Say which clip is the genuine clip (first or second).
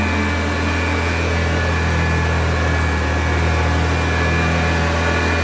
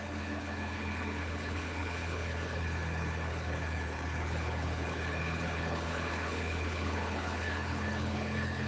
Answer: first